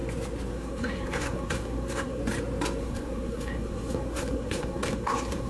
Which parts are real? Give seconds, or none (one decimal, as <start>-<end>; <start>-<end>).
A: 0.0-0.5; 2.2-2.8